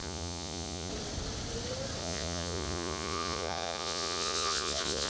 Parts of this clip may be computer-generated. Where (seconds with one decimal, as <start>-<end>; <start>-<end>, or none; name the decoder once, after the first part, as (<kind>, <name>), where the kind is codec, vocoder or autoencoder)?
0.0-0.9 (vocoder, Vocos); 2.0-5.1